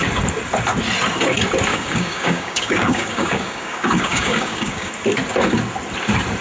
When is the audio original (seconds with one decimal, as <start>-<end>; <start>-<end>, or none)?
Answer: 0.0-1.7; 4.9-6.4